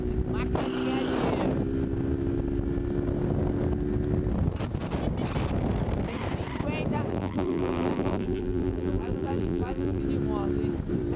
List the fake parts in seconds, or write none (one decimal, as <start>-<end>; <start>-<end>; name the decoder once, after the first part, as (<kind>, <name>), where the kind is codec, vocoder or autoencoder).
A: 7.1-10.0 (vocoder, BigVGAN v2)